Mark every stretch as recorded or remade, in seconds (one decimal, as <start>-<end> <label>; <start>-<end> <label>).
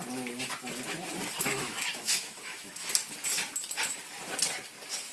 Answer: 0.0-1.4 recorded; 1.4-2.9 remade; 2.9-5.1 recorded